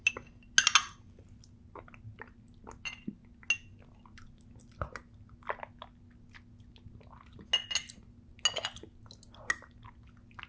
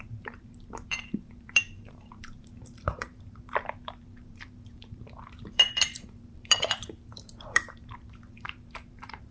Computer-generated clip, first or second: second